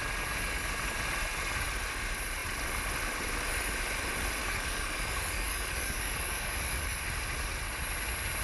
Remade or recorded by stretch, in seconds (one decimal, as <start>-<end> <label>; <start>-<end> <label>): 0.0-4.4 recorded; 4.4-7.0 remade; 7.0-8.4 recorded